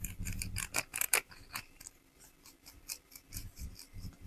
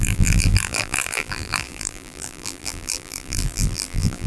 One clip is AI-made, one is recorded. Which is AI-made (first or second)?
second